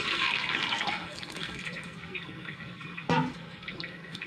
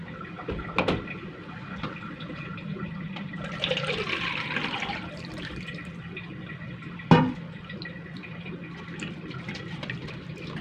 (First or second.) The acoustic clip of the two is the second